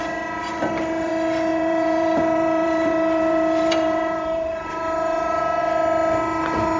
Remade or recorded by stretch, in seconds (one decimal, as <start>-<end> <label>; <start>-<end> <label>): 0.0-0.5 recorded; 0.5-1.1 remade; 1.1-1.5 recorded; 1.5-5.6 remade; 5.6-6.8 recorded